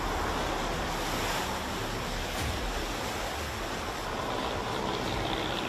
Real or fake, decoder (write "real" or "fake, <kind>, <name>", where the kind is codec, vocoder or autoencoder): real